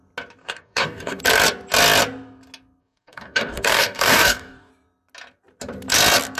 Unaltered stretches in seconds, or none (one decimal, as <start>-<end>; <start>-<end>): 0.0-0.4; 1.2-2.8; 4.7-6.4